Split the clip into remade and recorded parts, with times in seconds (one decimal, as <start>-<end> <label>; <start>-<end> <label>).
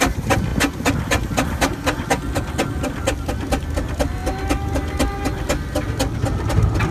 0.0-6.9 recorded